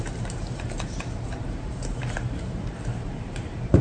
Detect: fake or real fake